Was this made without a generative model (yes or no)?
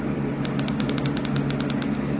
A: yes